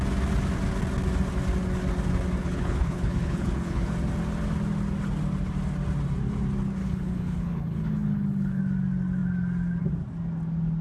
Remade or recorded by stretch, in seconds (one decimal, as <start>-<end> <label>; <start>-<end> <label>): 0.0-2.4 recorded; 2.4-3.9 remade; 3.9-6.8 recorded; 6.8-8.6 remade; 8.6-10.8 recorded